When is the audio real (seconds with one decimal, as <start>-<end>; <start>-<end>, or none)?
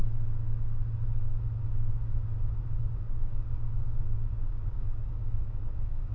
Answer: 0.0-2.8